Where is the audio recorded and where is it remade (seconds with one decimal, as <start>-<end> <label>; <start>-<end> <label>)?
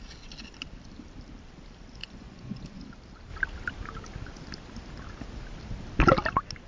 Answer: 0.0-2.0 recorded; 2.0-2.8 remade; 2.8-6.7 recorded